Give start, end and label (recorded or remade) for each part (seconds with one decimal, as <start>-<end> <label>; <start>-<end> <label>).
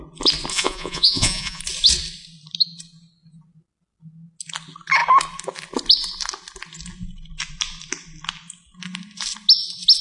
0.0-0.5 recorded; 0.5-1.6 remade; 1.6-10.0 recorded